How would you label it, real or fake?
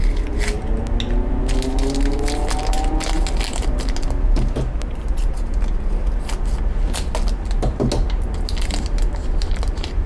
real